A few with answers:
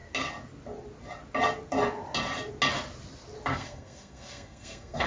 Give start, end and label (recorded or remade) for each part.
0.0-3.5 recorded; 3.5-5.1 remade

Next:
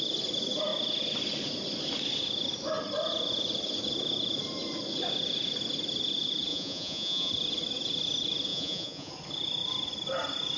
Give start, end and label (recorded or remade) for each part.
0.0-6.5 recorded; 6.5-7.3 remade; 7.3-8.5 recorded; 8.5-9.1 remade; 9.1-10.6 recorded

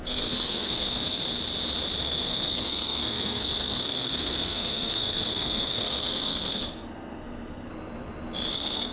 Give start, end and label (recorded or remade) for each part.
0.0-1.2 remade; 1.2-2.0 recorded; 2.0-7.7 remade; 7.7-8.5 recorded; 8.5-8.9 remade